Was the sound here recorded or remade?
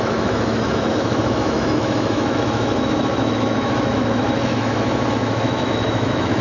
remade